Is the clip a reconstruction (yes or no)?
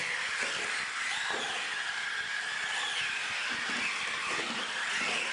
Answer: no